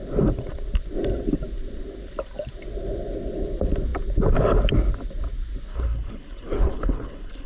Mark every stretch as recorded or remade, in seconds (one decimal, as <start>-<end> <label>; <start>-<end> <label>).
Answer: 0.0-5.7 recorded; 5.7-7.5 remade